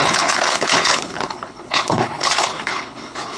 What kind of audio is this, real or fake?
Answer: fake